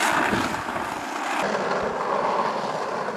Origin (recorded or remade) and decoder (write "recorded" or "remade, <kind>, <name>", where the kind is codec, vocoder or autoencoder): recorded